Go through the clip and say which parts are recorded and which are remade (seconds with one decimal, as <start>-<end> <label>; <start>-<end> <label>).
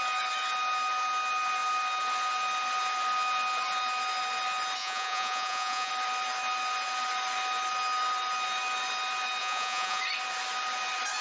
0.0-4.8 recorded; 4.8-5.9 remade; 5.9-9.4 recorded; 9.4-10.0 remade; 10.0-11.2 recorded